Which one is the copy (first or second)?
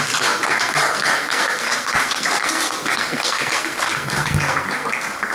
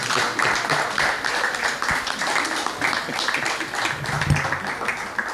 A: first